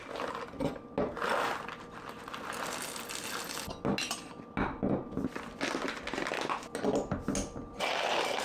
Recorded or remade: recorded